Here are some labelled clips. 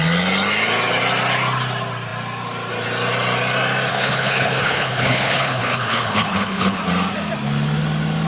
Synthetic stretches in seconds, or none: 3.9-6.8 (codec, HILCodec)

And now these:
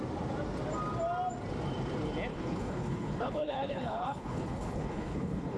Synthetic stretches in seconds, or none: 2.3-5.6 (codec, HILCodec)

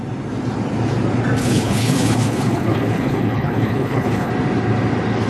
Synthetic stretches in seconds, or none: 1.4-4.3 (codec, HILCodec)

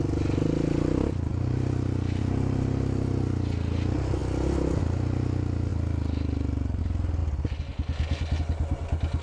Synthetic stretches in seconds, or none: none